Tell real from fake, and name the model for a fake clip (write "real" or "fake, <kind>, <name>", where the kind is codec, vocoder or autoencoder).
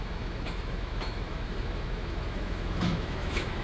fake, autoencoder, DAC-VAE